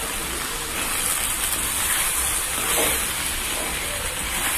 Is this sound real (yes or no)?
yes